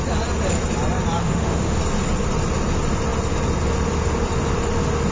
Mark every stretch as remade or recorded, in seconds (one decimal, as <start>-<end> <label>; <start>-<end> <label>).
0.0-1.2 recorded; 1.2-1.8 remade; 1.8-5.1 recorded